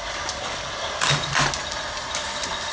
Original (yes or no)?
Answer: yes